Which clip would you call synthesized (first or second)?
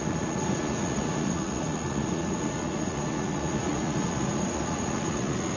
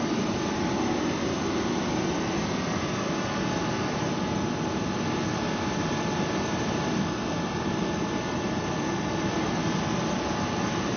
first